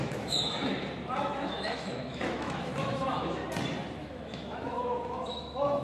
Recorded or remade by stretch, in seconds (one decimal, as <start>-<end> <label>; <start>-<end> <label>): 0.0-0.7 remade; 0.7-1.2 recorded; 1.2-3.4 remade; 3.4-4.0 recorded; 4.0-5.8 remade